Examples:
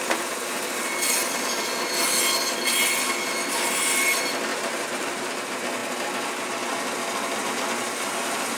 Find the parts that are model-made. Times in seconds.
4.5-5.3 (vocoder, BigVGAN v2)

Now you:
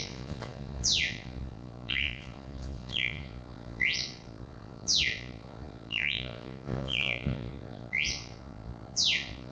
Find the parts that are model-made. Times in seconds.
0.0-9.5 (vocoder, Vocos)

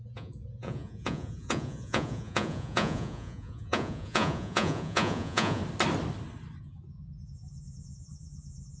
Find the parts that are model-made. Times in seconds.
0.0-5.6 (vocoder, Vocos); 6.6-8.8